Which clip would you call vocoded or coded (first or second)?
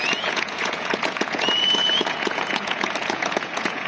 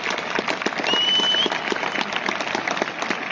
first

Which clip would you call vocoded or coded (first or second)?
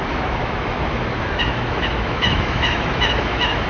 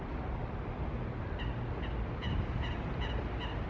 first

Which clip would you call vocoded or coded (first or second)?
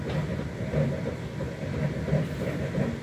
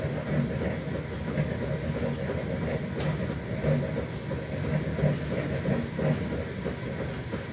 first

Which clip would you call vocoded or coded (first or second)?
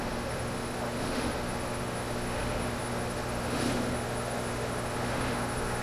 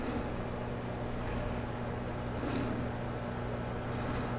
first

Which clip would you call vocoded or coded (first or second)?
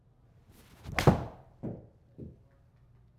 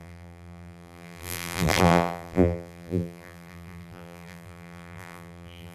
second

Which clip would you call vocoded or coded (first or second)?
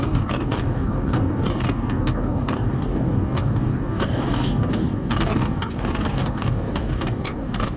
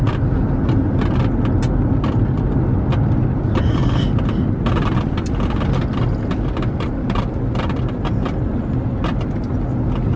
first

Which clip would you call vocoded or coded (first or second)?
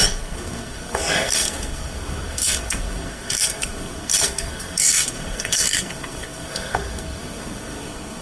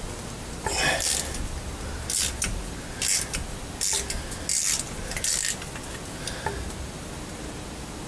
first